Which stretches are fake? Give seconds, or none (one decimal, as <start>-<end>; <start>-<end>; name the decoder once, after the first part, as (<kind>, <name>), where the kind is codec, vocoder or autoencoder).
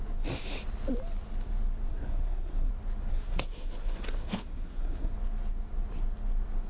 1.9-2.7 (codec, SNAC); 3.1-5.1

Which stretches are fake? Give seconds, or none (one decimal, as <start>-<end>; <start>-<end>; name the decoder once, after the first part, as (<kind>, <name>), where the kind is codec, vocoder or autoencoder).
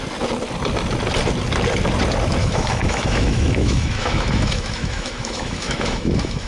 2.4-6.5 (autoencoder, DAC-VAE)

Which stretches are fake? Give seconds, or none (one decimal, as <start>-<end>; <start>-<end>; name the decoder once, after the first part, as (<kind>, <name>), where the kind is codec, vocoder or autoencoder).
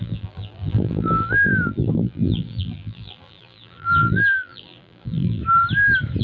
0.0-5.4 (vocoder, BigVGAN v2)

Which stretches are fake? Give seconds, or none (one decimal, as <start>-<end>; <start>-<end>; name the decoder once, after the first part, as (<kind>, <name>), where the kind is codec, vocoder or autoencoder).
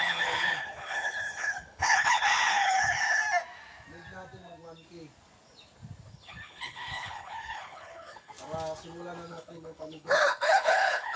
0.0-3.2 (codec, HILCodec); 6.1-8.3; 9.3-11.2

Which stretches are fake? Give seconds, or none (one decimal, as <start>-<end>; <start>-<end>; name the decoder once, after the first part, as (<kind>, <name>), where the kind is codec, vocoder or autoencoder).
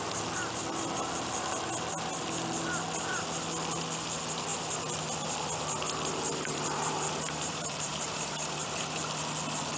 6.3-9.0 (vocoder, BigVGAN v2)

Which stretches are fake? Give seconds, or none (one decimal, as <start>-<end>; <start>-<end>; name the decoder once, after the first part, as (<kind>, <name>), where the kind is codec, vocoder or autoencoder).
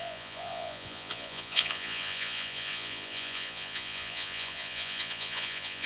0.0-5.9 (vocoder, Vocos)